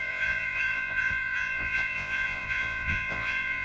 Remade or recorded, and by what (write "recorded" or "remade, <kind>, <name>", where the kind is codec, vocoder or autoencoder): remade, vocoder, Vocos